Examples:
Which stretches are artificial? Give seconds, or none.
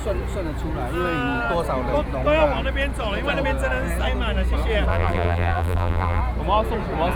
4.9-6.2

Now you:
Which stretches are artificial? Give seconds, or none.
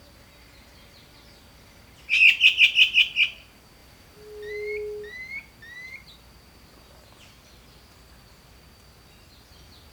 none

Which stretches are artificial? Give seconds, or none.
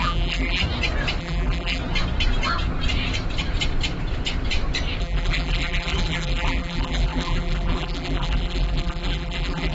0.0-0.6; 1.2-1.8; 5.0-9.7